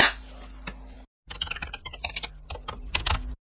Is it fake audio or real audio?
real